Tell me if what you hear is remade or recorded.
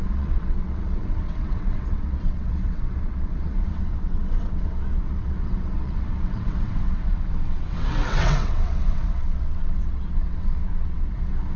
remade